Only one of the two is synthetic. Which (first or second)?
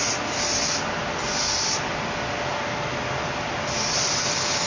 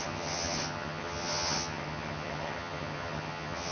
second